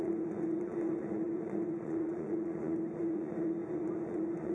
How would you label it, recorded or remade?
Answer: remade